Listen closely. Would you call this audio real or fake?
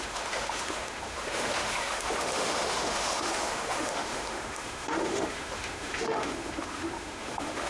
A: fake